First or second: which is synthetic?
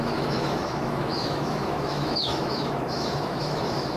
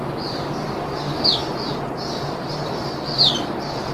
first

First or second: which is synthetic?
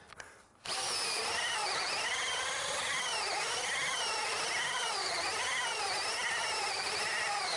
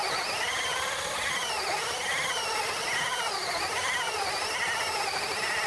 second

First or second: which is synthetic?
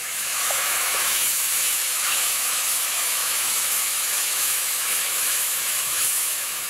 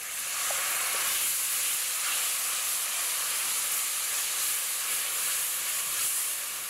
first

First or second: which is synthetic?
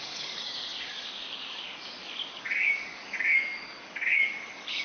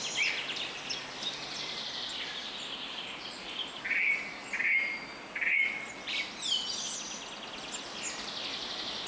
first